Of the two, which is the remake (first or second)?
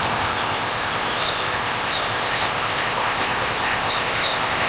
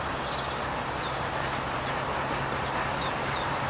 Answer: first